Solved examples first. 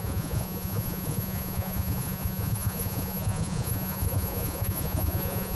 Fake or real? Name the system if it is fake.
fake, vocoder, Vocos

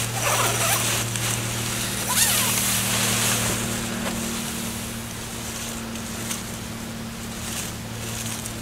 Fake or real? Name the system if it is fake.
real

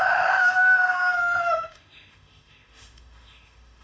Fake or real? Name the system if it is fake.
fake, autoencoder, DAC-VAE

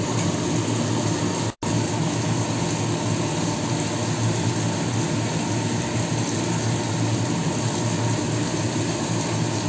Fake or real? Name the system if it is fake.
real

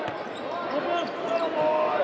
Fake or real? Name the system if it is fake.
real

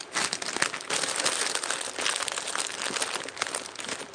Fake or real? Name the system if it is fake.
real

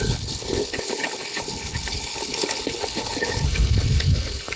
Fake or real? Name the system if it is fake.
fake, codec, HILCodec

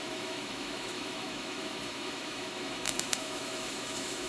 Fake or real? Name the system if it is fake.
fake, autoencoder, DAC-VAE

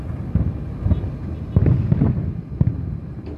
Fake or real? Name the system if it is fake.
real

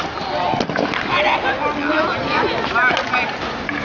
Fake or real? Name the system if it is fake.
real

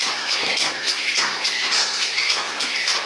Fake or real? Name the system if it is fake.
fake, codec, SNAC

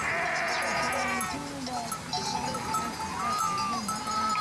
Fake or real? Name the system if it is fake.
real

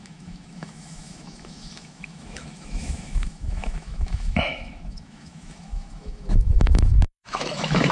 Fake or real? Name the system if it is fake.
fake, autoencoder, DAC-VAE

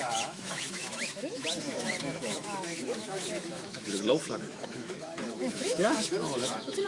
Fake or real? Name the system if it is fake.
fake, autoencoder, DAC-VAE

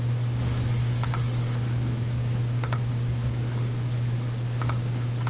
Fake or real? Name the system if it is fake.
fake, codec, DAC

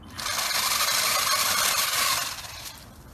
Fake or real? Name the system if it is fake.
real